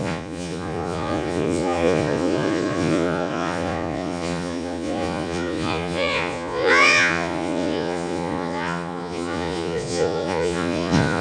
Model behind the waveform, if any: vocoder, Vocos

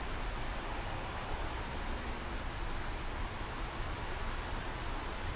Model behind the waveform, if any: none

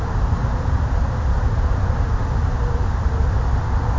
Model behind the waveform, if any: none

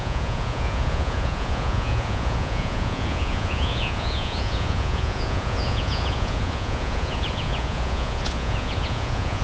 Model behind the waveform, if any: vocoder, Vocos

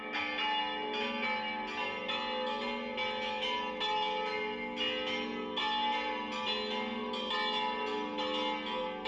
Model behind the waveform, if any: none